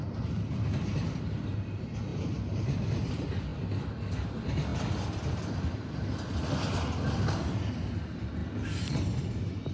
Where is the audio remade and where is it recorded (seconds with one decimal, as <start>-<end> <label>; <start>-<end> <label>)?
0.0-9.7 recorded